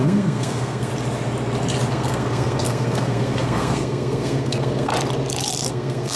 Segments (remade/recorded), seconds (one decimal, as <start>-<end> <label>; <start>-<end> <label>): 0.0-0.9 remade; 0.9-1.9 recorded; 1.9-4.9 remade; 4.9-5.7 recorded; 5.7-6.2 remade